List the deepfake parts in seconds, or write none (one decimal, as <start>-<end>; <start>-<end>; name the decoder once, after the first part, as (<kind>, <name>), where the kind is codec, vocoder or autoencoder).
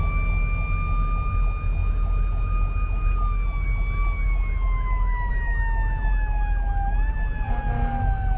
none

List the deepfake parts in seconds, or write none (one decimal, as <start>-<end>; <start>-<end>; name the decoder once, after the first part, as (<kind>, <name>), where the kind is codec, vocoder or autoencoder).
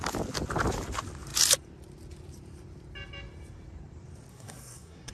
4.3-5.1 (codec, SNAC)